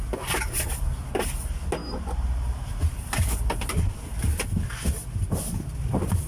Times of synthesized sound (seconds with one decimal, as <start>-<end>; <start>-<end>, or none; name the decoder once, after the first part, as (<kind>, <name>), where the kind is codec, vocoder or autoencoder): none